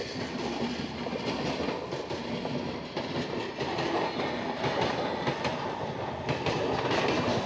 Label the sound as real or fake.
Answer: real